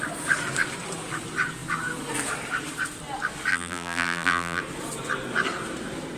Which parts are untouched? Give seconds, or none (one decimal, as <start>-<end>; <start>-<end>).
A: 0.0-3.5; 4.6-6.2